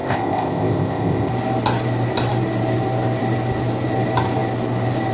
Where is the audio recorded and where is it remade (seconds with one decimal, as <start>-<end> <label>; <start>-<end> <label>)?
0.0-1.3 remade; 1.3-5.1 recorded